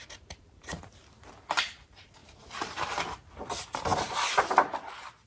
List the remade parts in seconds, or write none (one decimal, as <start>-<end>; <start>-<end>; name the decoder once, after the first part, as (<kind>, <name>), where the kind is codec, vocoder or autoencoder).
0.0-5.3 (vocoder, BigVGAN v2)